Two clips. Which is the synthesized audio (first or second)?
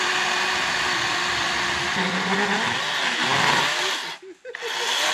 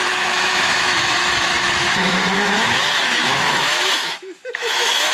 second